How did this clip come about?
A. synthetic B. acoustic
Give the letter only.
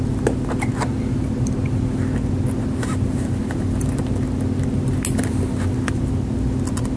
B